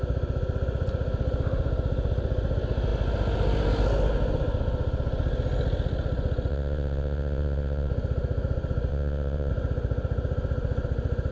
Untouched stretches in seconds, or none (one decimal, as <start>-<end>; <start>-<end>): 0.0-6.5; 7.9-8.9; 9.5-11.3